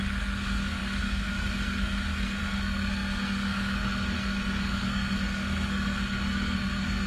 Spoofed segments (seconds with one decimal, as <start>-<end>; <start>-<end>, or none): 0.0-7.1

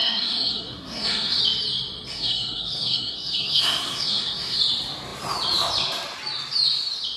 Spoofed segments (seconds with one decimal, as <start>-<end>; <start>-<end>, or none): 0.0-1.4; 2.1-4.6

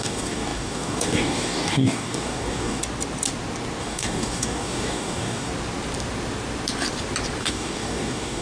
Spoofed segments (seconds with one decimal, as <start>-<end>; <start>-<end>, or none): 0.0-2.8; 3.8-5.5; 7.4-8.4

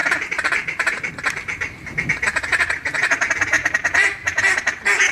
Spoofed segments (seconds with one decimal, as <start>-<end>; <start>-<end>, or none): 0.0-1.1; 3.6-4.6

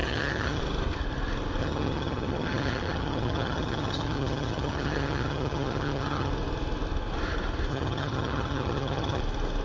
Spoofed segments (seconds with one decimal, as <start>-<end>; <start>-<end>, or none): 0.0-0.6; 1.6-6.3; 7.7-9.2

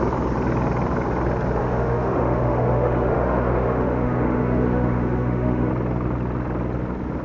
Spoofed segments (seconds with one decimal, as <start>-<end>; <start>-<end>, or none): 1.6-5.7

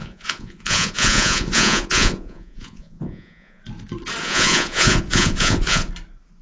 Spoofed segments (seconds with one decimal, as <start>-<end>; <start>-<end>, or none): 0.0-3.6; 4.2-5.9

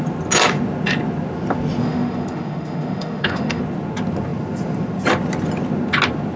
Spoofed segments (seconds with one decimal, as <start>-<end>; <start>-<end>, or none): 1.8-3.6